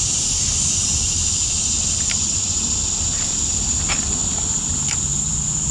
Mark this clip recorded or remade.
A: recorded